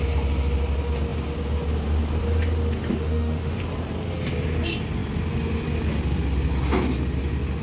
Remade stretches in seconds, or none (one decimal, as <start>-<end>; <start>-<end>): 2.9-3.6